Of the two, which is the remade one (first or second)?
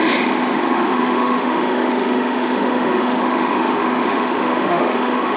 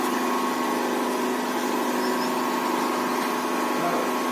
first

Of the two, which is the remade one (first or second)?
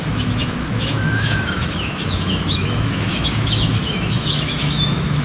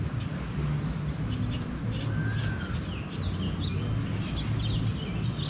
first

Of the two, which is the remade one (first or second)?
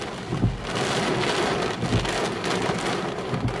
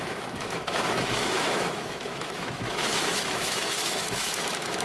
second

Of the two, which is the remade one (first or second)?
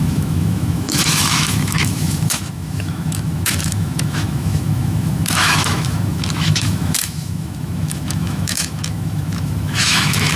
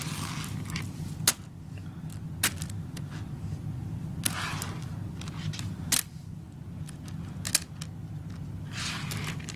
first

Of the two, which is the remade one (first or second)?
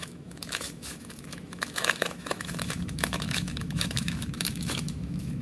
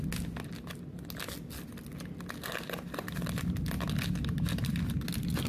first